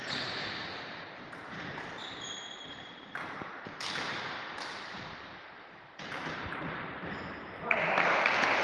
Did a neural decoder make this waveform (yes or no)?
yes